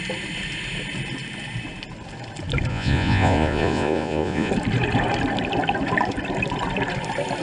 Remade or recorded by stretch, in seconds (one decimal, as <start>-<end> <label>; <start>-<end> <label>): 0.0-2.7 recorded; 2.7-4.5 remade; 4.5-7.4 recorded